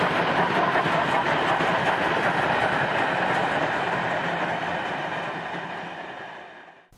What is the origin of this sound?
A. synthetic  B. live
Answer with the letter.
B